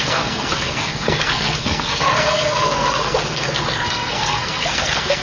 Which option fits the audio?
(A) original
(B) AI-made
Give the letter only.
B